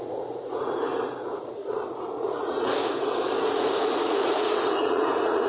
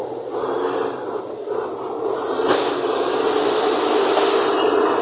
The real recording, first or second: second